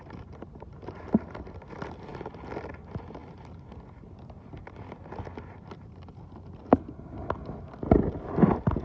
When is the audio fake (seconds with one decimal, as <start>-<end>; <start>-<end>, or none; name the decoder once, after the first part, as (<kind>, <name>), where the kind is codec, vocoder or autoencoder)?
none